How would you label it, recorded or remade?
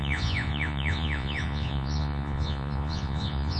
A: remade